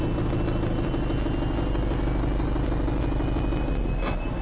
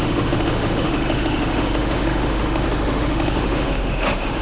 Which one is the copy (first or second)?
second